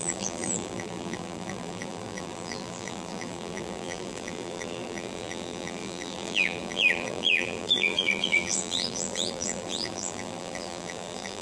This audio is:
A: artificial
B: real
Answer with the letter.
A